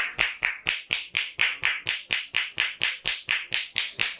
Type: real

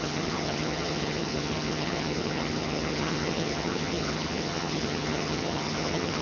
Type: fake